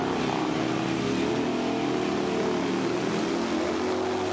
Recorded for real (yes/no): yes